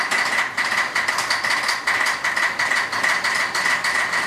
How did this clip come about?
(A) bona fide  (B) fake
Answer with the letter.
A